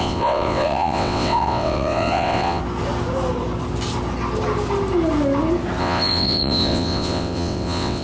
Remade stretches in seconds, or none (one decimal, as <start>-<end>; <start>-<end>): 0.0-2.6; 5.8-8.0